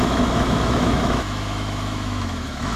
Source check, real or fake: fake